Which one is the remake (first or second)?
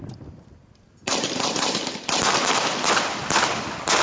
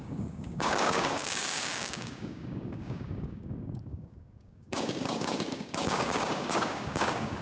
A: second